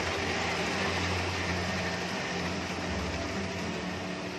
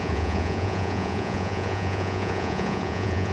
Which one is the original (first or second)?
first